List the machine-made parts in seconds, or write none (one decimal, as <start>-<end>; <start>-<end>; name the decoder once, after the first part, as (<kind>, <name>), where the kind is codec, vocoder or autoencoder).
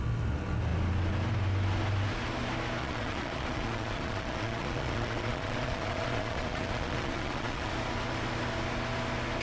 2.8-7.7 (vocoder, Vocos)